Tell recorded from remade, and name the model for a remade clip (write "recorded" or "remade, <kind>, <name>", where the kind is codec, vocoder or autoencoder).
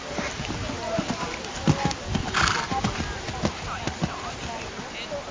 recorded